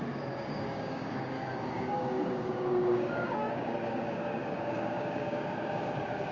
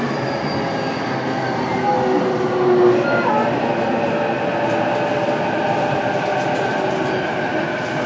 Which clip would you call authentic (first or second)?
second